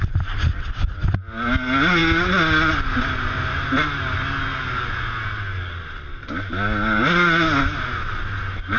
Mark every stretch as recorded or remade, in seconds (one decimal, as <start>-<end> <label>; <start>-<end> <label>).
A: 0.0-8.8 recorded